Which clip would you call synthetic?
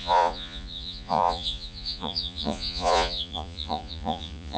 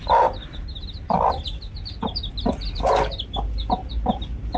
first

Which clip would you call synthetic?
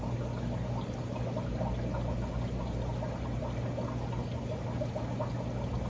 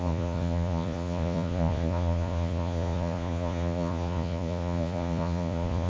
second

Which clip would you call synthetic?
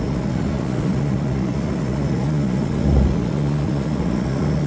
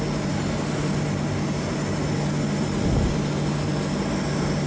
first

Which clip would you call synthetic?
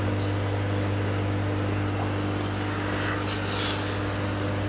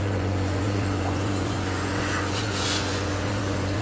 second